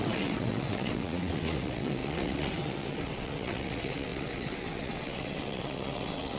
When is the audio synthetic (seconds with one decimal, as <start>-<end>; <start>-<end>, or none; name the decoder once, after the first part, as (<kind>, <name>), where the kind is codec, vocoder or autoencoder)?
0.0-6.4 (vocoder, WaveNeXt)